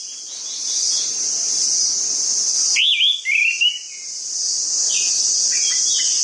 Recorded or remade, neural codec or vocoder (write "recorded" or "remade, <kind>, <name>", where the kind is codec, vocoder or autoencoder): recorded